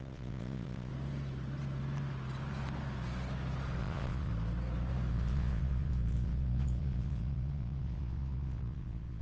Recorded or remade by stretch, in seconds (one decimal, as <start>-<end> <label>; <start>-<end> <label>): 0.0-0.9 remade; 0.9-3.8 recorded; 3.8-4.3 remade; 4.3-5.1 recorded; 5.1-9.2 remade